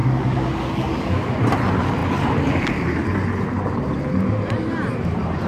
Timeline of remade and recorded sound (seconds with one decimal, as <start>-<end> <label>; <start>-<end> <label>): 0.0-1.4 remade; 1.4-5.5 recorded